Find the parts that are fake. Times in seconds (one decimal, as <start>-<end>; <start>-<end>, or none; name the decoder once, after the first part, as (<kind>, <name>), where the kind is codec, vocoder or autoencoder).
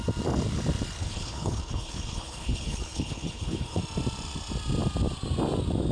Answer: 1.0-3.8 (codec, HILCodec)